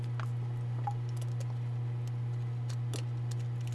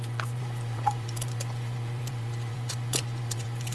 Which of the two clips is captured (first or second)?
first